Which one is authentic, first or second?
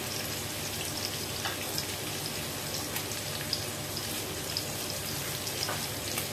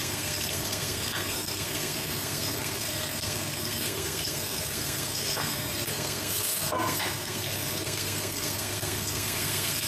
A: first